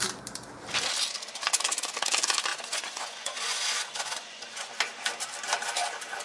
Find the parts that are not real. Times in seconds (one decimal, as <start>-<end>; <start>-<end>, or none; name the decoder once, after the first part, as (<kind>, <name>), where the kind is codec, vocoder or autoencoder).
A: 2.5-4.7 (vocoder, Vocos)